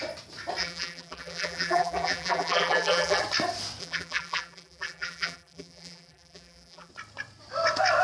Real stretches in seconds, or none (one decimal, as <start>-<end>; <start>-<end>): 0.0-0.6; 3.2-3.8; 6.9-8.0